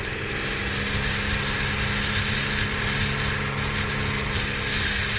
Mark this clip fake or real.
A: real